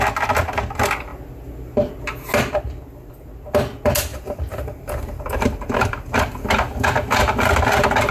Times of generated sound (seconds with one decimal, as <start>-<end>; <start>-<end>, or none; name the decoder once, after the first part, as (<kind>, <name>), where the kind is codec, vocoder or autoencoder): 4.1-6.4 (vocoder, BigVGAN v2)